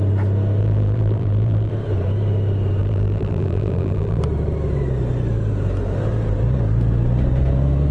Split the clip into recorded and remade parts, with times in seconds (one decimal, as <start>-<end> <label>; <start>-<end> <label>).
0.0-0.6 recorded; 0.6-1.7 remade; 1.7-2.8 recorded; 2.8-4.2 remade; 4.2-7.9 recorded